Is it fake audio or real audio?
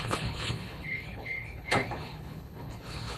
fake